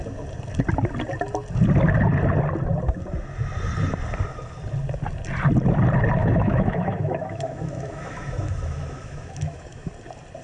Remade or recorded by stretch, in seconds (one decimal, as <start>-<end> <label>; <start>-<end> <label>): 0.0-6.2 recorded; 6.2-9.9 remade; 9.9-10.4 recorded